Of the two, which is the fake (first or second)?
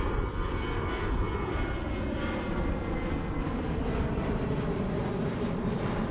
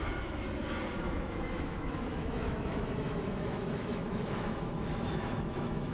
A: second